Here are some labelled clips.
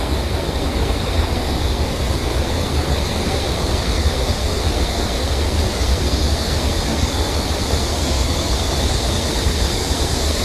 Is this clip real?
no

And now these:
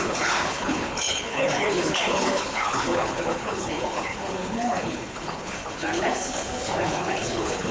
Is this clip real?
no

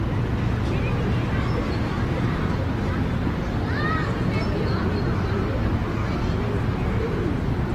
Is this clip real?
yes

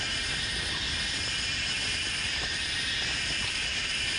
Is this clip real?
no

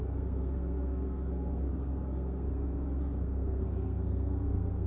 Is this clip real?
no